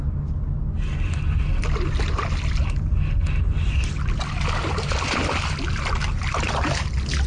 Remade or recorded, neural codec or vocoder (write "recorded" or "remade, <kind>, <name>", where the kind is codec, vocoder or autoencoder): recorded